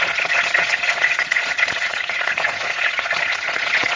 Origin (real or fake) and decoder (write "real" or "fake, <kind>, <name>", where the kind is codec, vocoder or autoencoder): fake, vocoder, Vocos